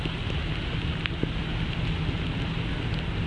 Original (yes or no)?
yes